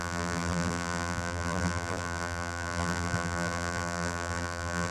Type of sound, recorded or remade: remade